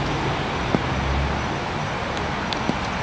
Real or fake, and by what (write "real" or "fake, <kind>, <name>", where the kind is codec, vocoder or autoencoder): real